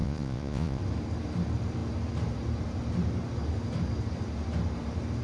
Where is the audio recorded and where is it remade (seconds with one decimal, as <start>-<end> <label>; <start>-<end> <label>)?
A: 0.0-0.8 remade; 0.8-5.2 recorded